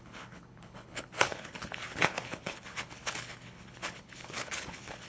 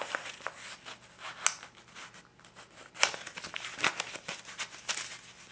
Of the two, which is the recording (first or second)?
second